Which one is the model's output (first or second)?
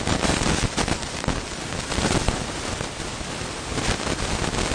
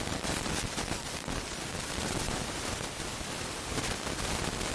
second